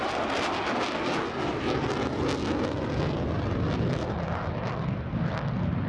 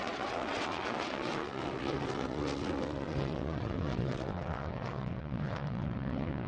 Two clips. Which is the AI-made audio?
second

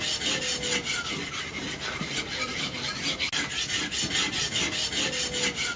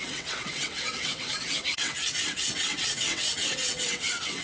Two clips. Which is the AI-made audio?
second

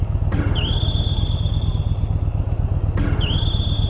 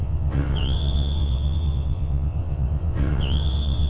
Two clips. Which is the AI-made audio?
second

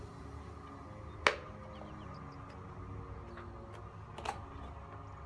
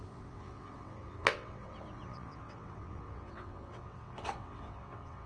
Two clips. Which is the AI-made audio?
second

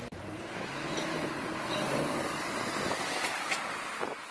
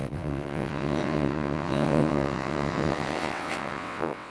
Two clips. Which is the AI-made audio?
second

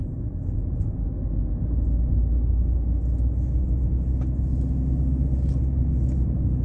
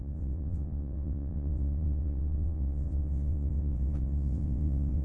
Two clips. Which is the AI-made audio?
second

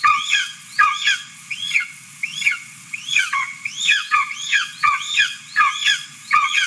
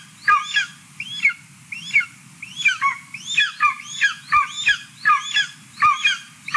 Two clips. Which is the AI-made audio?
first